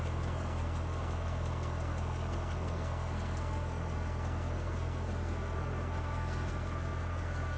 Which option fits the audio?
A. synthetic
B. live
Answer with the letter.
A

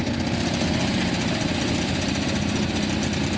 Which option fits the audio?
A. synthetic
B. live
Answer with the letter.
B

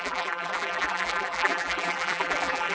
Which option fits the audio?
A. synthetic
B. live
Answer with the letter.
A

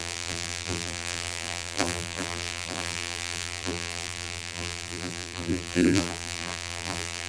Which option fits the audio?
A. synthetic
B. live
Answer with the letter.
A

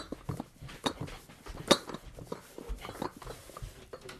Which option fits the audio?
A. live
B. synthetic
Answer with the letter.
A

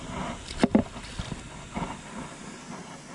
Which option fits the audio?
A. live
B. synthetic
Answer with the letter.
A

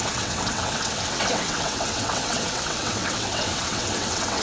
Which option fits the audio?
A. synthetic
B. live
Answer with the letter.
A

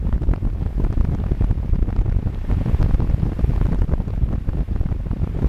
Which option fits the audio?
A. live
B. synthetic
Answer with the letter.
A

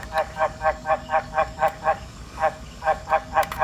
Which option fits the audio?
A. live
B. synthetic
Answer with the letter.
B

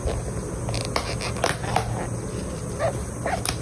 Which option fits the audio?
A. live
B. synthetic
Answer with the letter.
A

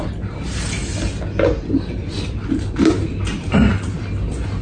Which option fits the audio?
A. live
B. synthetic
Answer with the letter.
A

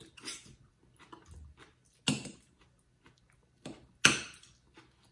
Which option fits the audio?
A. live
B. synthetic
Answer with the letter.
A